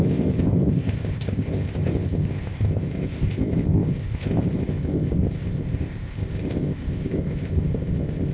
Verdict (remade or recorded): remade